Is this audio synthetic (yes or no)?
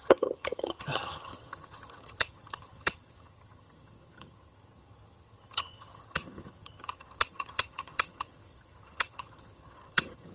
yes